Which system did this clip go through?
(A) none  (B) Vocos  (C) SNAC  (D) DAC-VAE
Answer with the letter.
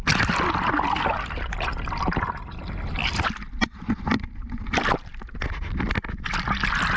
A